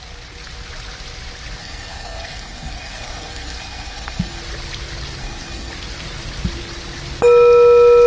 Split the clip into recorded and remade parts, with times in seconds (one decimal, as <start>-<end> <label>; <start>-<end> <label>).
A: 0.0-1.6 recorded; 1.6-4.4 remade; 4.4-5.2 recorded; 5.2-5.7 remade; 5.7-8.1 recorded